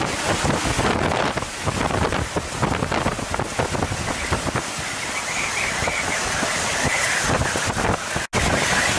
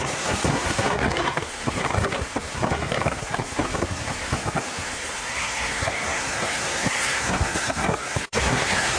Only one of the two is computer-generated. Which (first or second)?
second